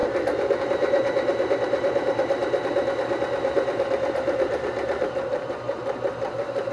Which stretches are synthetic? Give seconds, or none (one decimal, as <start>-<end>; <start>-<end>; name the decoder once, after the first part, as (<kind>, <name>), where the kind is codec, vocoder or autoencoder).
0.6-6.7 (vocoder, BigVGAN v2)